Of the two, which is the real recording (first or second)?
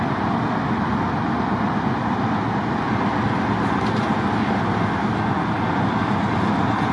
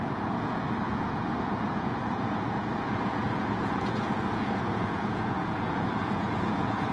first